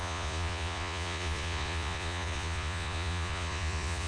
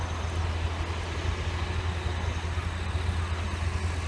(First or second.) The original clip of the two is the second